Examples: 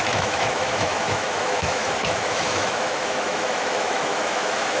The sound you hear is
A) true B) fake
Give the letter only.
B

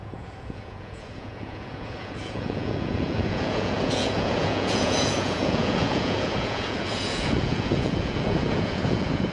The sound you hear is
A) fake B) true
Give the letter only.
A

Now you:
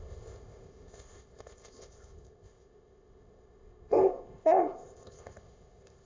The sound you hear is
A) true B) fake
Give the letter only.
B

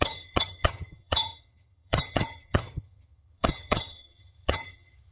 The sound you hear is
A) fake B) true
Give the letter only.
A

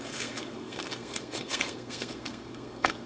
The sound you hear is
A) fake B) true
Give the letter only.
A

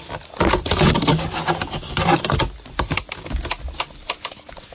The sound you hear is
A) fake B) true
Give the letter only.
B